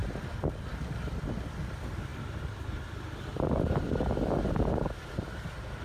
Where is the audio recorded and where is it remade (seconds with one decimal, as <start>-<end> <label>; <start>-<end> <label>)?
0.0-5.8 recorded